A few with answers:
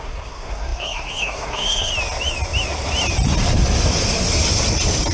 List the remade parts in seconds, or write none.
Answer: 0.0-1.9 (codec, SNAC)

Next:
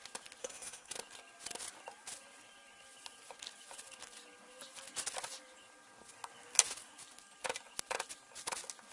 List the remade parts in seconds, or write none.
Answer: 0.4-0.9 (codec, SNAC)

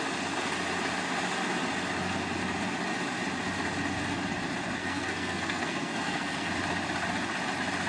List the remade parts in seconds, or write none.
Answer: 4.8-6.5 (codec, SNAC)

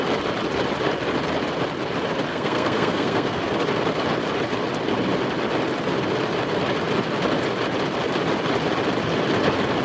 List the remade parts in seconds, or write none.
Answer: 2.3-3.4 (codec, SNAC)

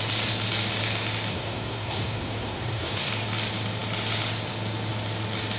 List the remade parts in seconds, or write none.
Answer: 1.3-3.1 (codec, SNAC)